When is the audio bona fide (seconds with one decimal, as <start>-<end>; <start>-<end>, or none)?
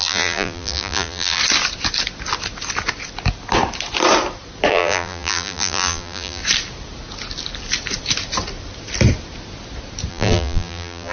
1.4-4.7; 6.4-10.1